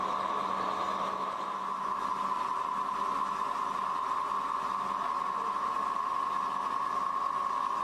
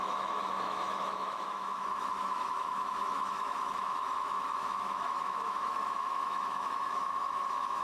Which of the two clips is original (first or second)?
first